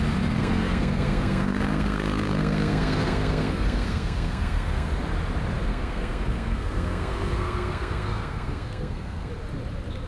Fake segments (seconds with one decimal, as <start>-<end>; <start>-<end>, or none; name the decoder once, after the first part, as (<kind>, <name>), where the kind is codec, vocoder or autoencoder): 0.4-4.9 (codec, SNAC); 5.7-9.3